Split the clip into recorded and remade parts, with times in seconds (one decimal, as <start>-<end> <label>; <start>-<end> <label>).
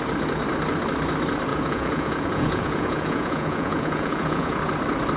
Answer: 0.0-1.5 recorded; 1.5-4.6 remade; 4.6-5.2 recorded